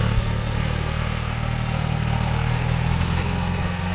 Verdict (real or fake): fake